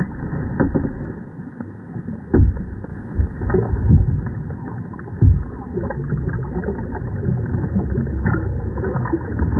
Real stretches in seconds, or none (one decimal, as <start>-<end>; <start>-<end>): 0.0-9.6

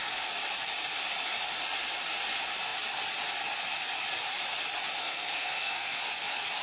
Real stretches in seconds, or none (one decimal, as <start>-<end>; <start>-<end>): 0.0-5.0; 6.0-6.6

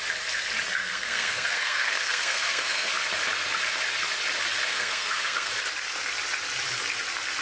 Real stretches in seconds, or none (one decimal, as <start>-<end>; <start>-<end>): 0.0-0.8; 2.9-4.7; 5.5-7.4

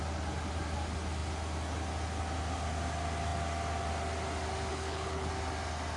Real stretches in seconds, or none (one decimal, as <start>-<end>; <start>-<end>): 0.0-4.7; 5.3-6.0

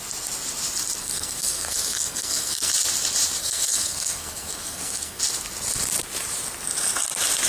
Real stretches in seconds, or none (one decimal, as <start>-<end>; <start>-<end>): 0.0-1.0; 2.7-3.4; 5.2-7.5